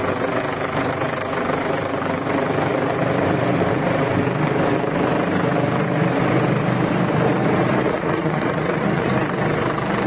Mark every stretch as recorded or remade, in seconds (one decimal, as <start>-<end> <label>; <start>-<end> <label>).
0.0-7.7 recorded; 7.7-9.1 remade; 9.1-10.1 recorded